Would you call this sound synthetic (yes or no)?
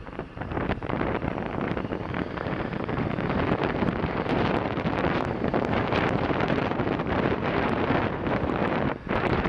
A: yes